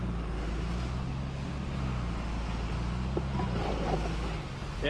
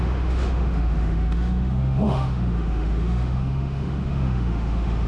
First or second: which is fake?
second